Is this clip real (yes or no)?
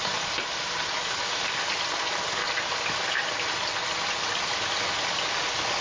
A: yes